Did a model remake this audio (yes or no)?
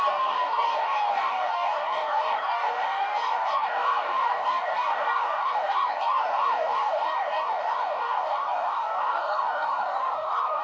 yes